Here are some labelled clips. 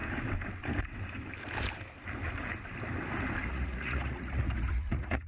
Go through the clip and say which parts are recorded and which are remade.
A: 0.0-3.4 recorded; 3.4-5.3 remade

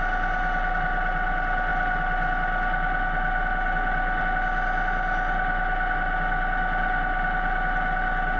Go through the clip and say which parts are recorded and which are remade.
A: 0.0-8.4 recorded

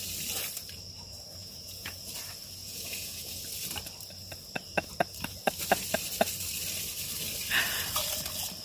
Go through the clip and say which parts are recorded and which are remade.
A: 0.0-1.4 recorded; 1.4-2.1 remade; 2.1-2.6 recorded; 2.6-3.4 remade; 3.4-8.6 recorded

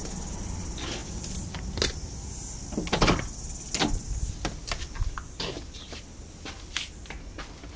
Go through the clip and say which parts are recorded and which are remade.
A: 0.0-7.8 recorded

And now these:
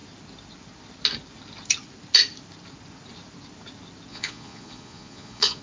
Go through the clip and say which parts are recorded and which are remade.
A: 0.0-4.1 recorded; 4.1-5.6 remade